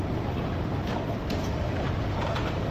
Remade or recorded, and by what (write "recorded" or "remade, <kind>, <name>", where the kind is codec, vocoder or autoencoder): remade, vocoder, BigVGAN v2